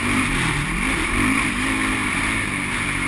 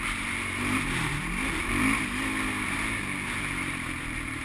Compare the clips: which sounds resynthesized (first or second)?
first